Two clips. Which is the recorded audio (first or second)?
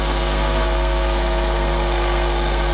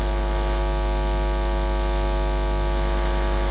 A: second